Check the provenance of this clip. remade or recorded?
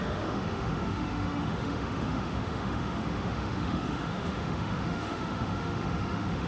remade